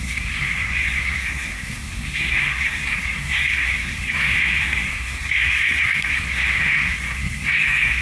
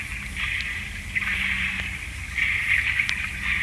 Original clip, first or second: second